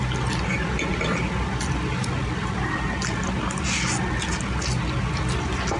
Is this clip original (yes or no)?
yes